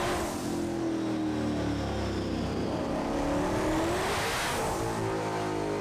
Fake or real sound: real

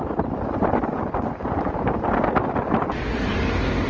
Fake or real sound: real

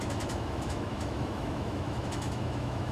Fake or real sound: fake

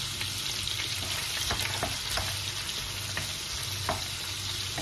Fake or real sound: real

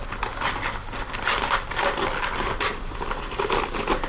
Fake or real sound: real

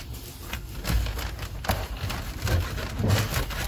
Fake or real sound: real